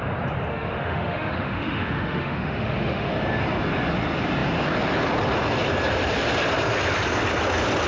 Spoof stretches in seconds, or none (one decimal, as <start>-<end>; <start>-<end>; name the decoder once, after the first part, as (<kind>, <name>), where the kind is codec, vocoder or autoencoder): 0.5-3.1 (autoencoder, DAC-VAE)